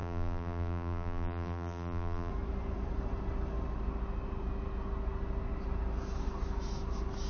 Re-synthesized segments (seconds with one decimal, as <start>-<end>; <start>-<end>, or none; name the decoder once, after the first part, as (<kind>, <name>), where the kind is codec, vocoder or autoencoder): 0.0-2.3 (vocoder, BigVGAN v2)